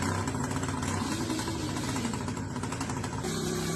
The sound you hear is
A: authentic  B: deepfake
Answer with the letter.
A